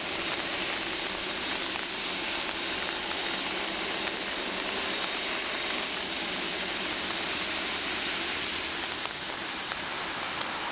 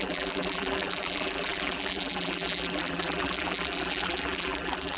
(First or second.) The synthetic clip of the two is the second